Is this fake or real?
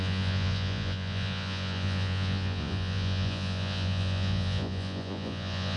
fake